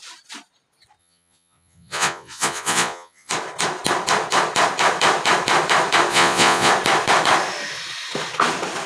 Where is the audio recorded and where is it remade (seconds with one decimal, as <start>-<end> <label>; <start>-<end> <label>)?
0.0-1.0 recorded; 1.0-3.3 remade; 3.3-6.1 recorded; 6.1-6.7 remade; 6.7-8.9 recorded